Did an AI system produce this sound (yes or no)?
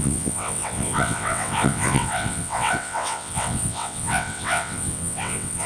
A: yes